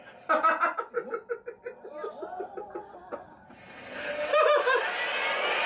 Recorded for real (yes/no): yes